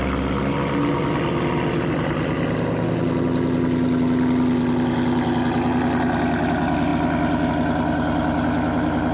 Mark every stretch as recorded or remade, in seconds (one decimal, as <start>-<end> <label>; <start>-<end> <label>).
0.0-9.1 recorded